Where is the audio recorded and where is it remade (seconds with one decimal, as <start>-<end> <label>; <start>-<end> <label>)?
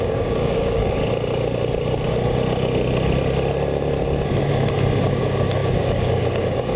0.0-1.0 remade; 1.0-5.1 recorded; 5.1-6.8 remade